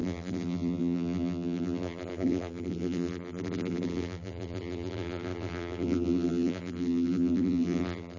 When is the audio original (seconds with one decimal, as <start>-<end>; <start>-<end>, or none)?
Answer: none